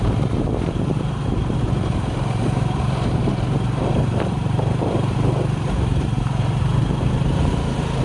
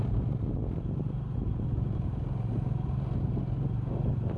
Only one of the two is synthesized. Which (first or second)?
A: first